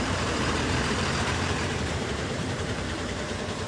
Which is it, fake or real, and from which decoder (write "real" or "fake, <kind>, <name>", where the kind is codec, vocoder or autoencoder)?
fake, vocoder, BigVGAN v2